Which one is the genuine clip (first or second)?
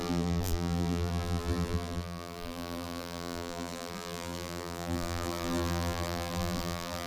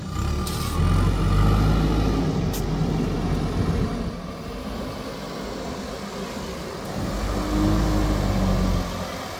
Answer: second